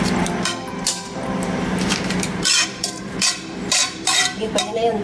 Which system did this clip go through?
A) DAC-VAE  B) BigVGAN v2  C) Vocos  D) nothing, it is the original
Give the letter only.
B